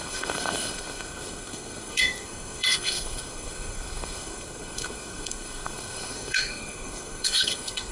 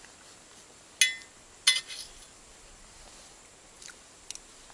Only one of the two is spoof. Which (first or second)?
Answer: first